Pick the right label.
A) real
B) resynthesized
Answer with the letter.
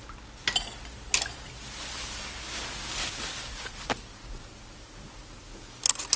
A